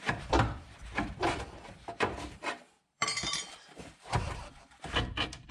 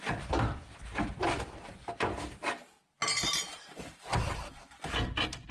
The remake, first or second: first